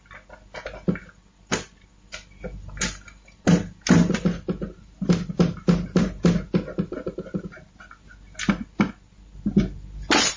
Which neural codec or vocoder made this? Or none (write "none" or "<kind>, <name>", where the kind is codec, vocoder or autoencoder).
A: none